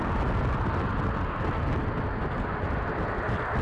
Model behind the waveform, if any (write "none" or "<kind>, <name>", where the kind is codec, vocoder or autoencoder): none